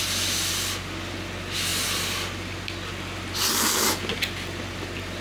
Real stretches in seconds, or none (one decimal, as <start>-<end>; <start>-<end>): 0.0-5.2